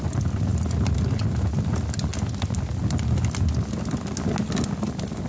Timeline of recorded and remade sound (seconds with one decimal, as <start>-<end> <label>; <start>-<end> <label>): 0.0-5.3 recorded